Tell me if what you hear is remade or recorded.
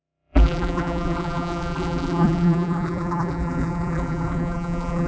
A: remade